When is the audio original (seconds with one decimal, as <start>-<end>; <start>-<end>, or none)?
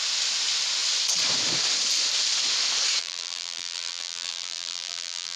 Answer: 0.0-3.0